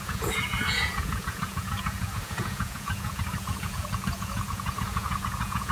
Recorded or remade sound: remade